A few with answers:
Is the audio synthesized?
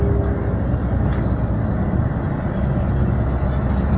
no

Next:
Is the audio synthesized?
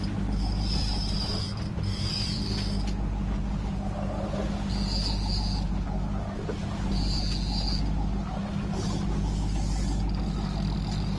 no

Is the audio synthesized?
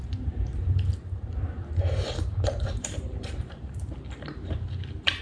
yes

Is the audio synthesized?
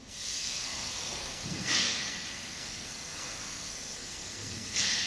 yes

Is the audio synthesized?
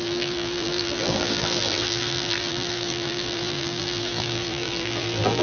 yes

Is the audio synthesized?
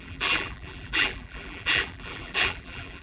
yes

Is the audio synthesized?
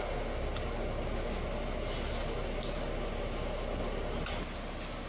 no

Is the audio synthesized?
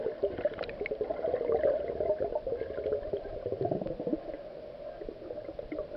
yes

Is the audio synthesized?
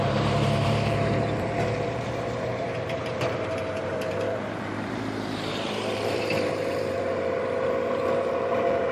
yes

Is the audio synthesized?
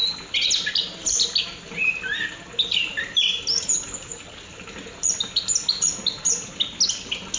no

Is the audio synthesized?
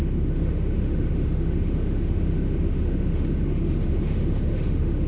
yes